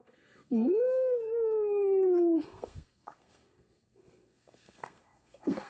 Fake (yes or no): yes